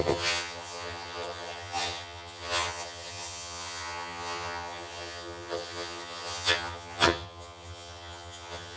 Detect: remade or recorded remade